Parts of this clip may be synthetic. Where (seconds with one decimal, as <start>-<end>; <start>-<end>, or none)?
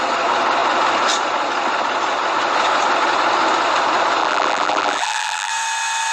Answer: 4.2-5.5